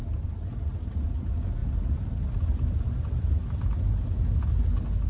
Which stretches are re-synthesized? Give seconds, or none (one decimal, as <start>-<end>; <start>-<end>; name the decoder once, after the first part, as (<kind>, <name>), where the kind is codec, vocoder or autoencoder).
none